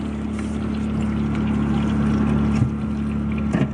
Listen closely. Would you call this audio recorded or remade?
recorded